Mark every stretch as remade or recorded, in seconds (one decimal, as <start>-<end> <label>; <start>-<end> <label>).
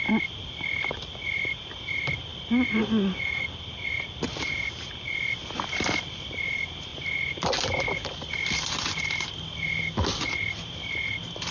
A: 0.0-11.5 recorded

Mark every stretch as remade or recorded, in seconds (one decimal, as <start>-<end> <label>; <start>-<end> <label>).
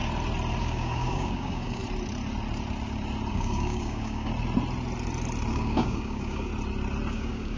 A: 0.0-0.6 recorded; 0.6-1.8 remade; 1.8-3.3 recorded; 3.3-4.3 remade; 4.3-5.5 recorded; 5.5-6.5 remade; 6.5-7.1 recorded; 7.1-7.6 remade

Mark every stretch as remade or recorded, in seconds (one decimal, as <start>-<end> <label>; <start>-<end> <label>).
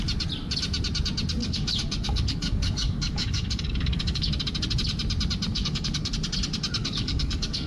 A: 0.0-1.4 recorded; 1.4-4.3 remade; 4.3-5.5 recorded; 5.5-6.1 remade; 6.1-6.8 recorded; 6.8-7.7 remade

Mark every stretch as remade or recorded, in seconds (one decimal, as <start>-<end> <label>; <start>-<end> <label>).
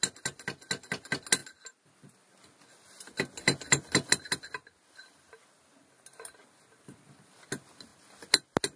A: 0.0-8.8 recorded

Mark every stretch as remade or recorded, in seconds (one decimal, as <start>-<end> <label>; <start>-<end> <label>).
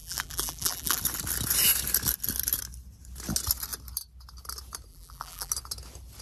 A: 0.0-1.0 remade; 1.0-4.9 recorded; 4.9-5.5 remade; 5.5-6.2 recorded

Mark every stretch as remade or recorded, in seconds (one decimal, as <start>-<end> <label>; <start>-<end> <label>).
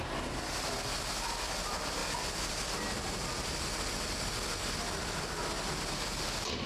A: 0.0-6.7 recorded